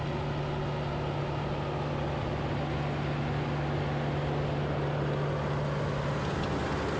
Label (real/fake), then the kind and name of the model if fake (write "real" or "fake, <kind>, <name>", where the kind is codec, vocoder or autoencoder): real